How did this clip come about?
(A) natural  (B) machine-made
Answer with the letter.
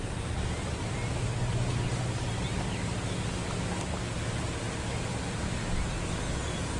A